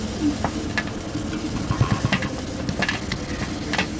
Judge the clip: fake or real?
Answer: real